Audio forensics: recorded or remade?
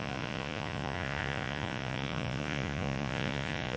remade